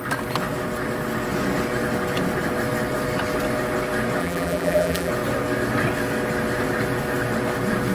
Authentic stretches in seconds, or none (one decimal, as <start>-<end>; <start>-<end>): 0.0-4.2; 5.1-7.9